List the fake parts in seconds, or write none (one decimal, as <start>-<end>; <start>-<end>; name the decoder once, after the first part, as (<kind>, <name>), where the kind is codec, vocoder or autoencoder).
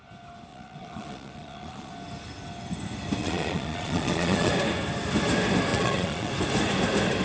0.5-1.9 (vocoder, Vocos); 3.2-4.5; 5.7-6.3